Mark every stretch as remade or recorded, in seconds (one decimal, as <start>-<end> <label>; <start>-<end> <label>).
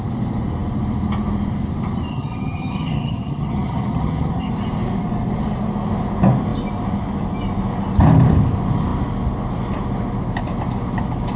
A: 0.0-2.1 recorded; 2.1-4.5 remade; 4.5-11.4 recorded